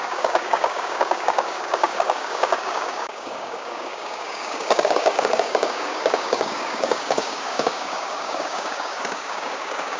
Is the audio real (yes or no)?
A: no